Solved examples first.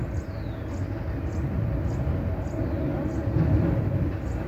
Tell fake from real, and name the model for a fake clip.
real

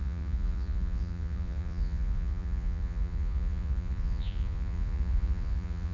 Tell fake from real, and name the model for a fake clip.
fake, vocoder, Vocos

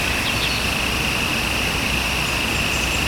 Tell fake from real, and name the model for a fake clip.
real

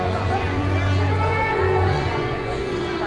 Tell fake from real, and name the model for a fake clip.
fake, vocoder, Vocos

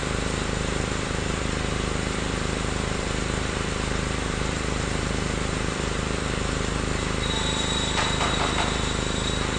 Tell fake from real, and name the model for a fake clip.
fake, vocoder, BigVGAN v2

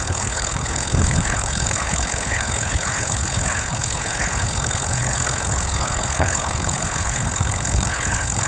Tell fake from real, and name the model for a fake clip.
fake, codec, HILCodec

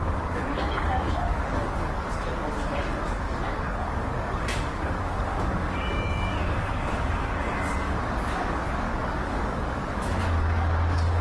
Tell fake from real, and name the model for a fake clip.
fake, codec, DAC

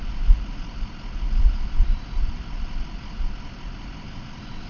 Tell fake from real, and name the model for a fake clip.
real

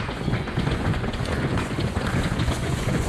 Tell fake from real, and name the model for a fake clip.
fake, vocoder, Vocos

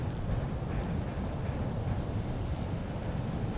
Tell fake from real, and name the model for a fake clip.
real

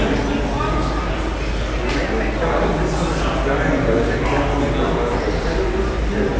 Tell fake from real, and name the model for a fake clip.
real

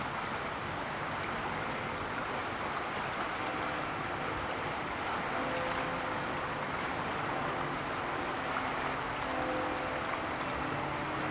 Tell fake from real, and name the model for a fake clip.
real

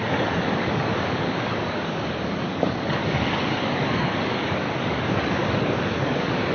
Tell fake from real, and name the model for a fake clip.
fake, codec, DAC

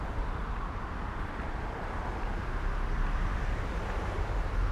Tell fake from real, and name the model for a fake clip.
fake, vocoder, BigVGAN v2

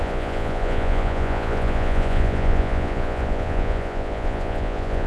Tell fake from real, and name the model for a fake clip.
fake, vocoder, Vocos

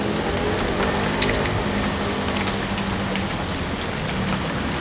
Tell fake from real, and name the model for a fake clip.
real